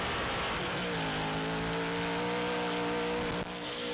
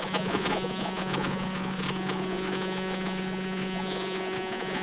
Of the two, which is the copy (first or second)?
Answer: second